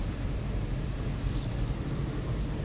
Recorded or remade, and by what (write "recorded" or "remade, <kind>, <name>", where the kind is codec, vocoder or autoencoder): remade, vocoder, BigVGAN v2